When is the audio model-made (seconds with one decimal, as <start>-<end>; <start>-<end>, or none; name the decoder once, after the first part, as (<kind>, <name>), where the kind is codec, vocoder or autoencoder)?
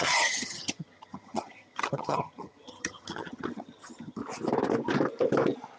0.0-4.2 (vocoder, HiFi-GAN)